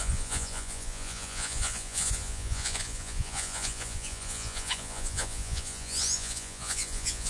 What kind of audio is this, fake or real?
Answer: fake